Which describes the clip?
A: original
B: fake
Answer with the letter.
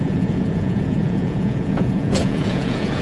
B